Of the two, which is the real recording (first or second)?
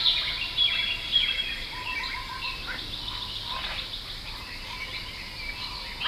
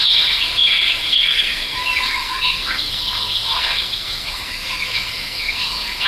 first